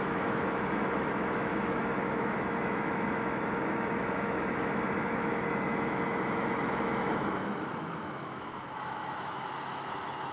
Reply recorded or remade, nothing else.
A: remade